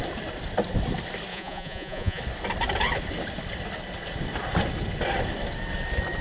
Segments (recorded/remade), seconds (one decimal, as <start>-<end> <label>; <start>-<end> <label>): 0.0-1.3 recorded; 1.3-2.2 remade; 2.2-6.2 recorded